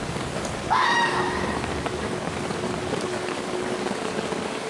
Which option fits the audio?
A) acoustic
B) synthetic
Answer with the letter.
B